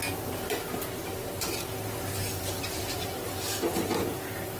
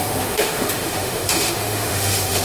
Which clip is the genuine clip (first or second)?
first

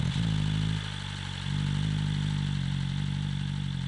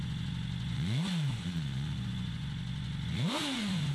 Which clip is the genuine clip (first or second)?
first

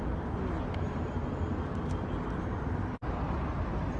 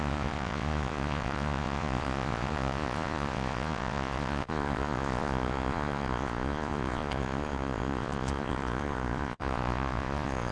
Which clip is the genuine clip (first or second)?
first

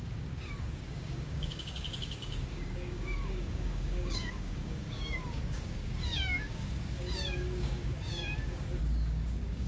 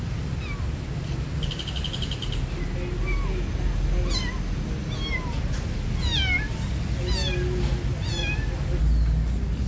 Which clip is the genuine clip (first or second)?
second